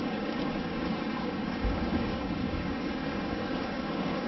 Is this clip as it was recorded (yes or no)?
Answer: no